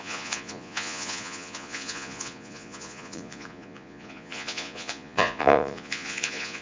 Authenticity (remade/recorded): remade